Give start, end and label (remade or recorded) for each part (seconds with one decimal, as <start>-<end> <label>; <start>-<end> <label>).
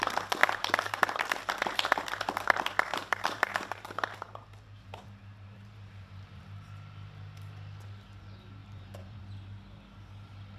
0.0-0.4 recorded; 0.4-1.2 remade; 1.2-2.9 recorded; 2.9-6.4 remade; 6.4-8.6 recorded; 8.6-9.2 remade; 9.2-10.6 recorded